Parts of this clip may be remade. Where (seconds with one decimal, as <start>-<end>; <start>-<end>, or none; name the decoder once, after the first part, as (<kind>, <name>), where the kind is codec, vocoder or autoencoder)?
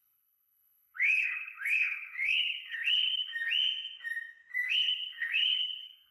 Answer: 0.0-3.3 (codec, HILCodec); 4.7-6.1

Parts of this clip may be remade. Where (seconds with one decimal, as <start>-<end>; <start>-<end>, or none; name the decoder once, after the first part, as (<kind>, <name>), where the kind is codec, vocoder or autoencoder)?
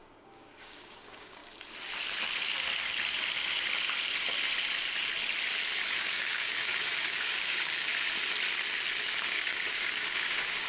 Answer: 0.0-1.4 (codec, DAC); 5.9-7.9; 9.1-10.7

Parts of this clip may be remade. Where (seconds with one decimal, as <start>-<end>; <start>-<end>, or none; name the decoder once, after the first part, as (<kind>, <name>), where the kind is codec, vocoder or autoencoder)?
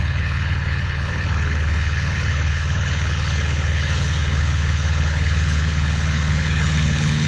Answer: 0.0-7.3 (codec, HILCodec)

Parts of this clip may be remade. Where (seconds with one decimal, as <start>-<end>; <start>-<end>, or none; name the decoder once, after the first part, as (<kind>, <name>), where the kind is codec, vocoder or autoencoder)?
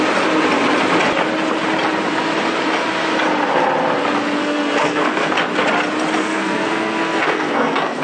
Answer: 4.4-5.3 (codec, SNAC); 6.2-8.0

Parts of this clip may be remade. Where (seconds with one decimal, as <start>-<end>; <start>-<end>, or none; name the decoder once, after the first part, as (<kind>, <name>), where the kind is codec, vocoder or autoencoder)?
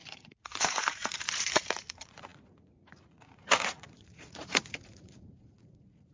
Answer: 0.0-6.1 (vocoder, Vocos)